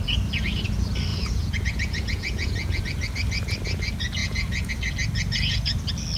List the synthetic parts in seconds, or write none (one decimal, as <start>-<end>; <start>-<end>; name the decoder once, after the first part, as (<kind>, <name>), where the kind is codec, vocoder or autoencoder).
1.1-2.8 (vocoder, Vocos); 4.2-4.7